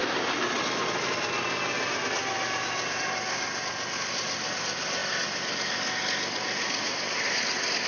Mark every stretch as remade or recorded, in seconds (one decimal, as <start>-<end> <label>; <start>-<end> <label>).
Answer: 0.0-7.9 recorded